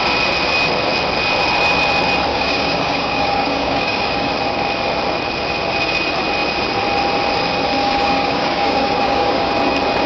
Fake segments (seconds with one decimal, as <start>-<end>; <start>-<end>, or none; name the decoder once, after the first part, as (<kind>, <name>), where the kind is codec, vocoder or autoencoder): 2.3-4.3 (codec, DAC); 7.8-9.5